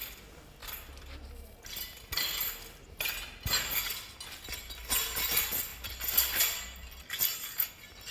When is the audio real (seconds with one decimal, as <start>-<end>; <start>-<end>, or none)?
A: 0.0-8.1